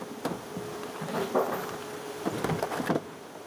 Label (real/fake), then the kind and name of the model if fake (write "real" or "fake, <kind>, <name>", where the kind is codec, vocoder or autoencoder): real